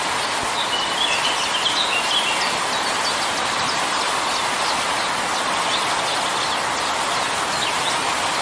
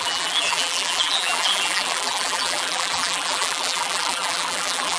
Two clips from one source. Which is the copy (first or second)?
second